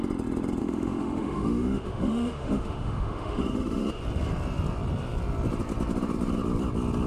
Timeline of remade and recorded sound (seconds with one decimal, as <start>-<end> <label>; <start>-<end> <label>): 0.0-0.6 recorded; 0.6-4.0 remade; 4.0-7.1 recorded